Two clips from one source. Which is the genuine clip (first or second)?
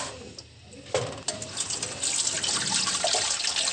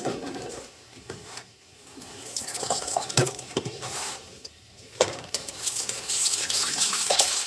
first